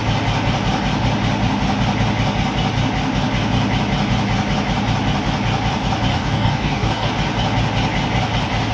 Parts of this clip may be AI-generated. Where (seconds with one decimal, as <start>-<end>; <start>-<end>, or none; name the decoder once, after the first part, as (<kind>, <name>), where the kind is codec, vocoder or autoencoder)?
6.1-7.1 (codec, DAC)